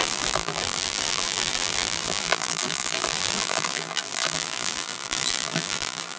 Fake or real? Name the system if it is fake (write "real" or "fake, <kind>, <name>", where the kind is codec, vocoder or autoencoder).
fake, vocoder, BigVGAN v2